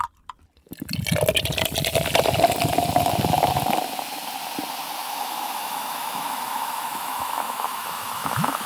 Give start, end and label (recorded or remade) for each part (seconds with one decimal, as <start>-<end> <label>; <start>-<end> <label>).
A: 0.0-5.0 recorded; 5.0-8.7 remade